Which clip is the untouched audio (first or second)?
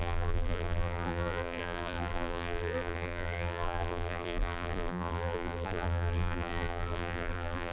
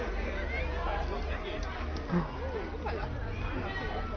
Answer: second